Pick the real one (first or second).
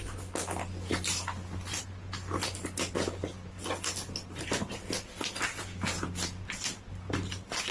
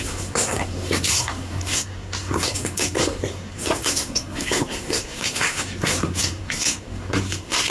first